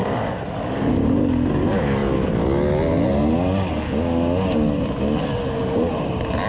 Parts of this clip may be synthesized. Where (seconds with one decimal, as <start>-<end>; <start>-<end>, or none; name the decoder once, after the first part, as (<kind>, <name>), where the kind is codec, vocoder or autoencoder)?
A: none